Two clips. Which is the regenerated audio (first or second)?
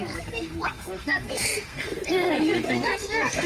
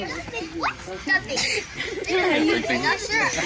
first